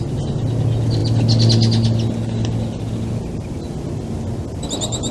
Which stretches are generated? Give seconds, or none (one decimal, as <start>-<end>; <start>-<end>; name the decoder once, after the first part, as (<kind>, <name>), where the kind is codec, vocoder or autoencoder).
none